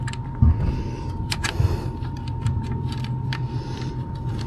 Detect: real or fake fake